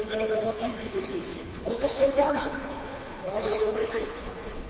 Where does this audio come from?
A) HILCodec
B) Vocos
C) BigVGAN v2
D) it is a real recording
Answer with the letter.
A